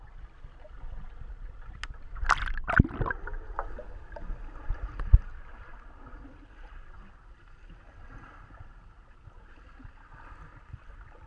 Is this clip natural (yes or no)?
yes